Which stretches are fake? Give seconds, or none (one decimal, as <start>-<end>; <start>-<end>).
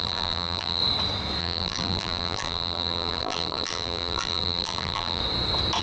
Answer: 0.0-0.8; 1.4-5.2